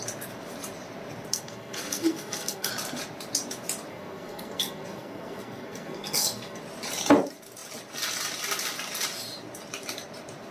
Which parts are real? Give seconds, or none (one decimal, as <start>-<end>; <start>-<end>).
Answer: 0.0-1.3; 2.7-3.9; 6.6-10.5